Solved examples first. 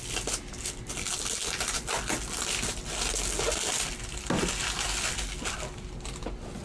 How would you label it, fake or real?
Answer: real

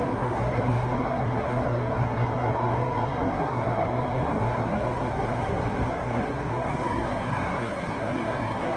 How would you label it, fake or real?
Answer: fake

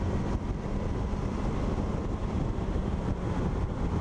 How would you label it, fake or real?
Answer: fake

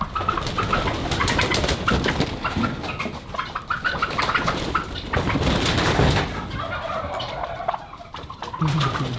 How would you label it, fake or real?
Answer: real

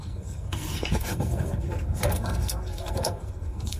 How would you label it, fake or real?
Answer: fake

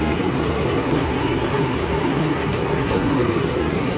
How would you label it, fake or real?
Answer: fake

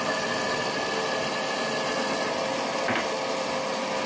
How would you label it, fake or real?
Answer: real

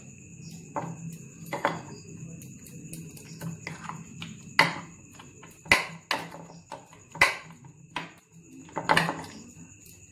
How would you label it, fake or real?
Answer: real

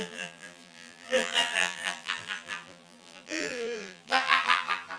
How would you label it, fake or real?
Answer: fake